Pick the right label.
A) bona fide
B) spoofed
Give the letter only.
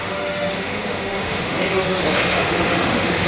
B